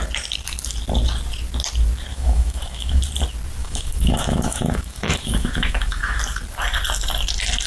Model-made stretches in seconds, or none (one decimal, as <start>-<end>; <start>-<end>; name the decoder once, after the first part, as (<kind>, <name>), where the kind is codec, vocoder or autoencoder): 2.1-3.0 (autoencoder, DAC-VAE); 3.6-6.2